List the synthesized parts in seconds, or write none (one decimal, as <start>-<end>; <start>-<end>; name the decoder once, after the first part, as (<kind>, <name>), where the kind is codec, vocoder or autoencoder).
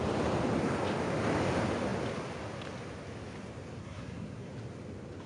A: 3.8-4.5 (codec, SNAC)